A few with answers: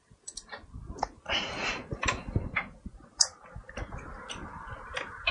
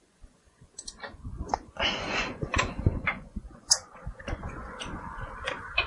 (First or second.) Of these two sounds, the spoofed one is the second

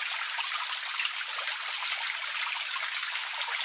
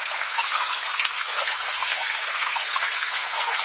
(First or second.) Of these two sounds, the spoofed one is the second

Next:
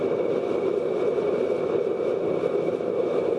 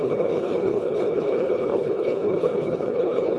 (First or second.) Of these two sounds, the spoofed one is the second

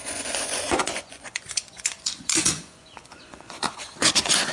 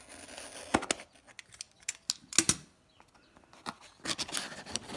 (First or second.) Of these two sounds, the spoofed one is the first